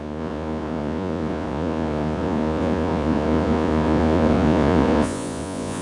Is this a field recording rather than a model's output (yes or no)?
no